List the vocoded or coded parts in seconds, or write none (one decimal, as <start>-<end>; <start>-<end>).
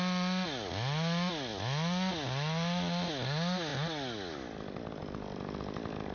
none